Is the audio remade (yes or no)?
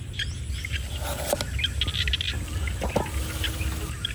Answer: no